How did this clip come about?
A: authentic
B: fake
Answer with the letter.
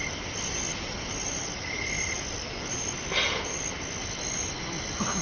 A